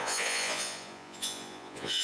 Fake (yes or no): yes